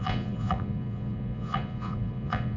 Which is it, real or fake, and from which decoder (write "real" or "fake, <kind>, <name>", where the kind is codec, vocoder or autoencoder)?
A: fake, vocoder, Vocos